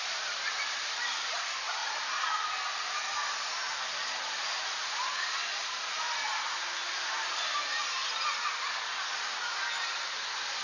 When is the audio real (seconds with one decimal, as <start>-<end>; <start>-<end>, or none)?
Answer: 0.0-10.6